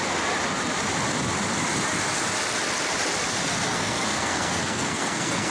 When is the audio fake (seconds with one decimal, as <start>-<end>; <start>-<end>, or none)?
3.4-5.5

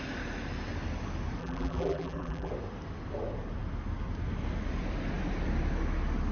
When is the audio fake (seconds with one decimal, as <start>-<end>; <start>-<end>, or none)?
1.4-2.5